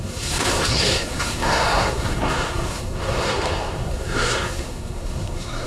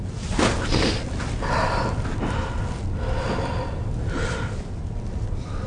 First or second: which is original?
second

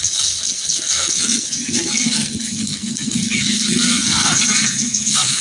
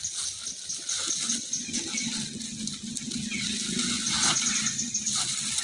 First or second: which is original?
second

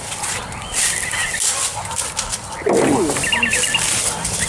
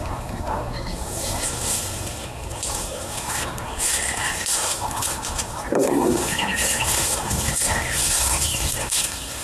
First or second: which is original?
first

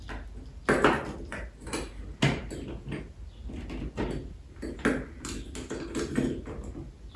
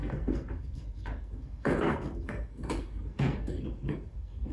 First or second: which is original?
first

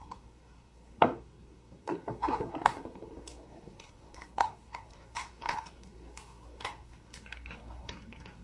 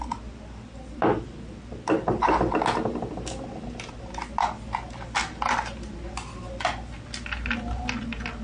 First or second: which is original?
second